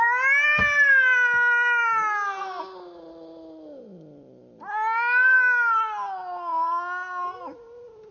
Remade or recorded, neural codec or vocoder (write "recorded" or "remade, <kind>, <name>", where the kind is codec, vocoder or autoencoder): recorded